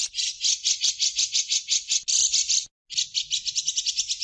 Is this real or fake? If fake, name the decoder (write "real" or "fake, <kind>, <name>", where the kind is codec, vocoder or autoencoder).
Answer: real